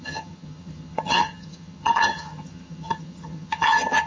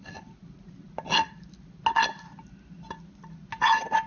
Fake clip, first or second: first